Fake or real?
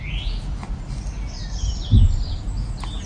real